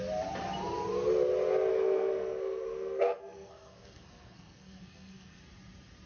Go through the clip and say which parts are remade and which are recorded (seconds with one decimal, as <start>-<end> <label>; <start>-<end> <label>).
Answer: 0.0-1.7 recorded; 1.7-5.4 remade; 5.4-6.1 recorded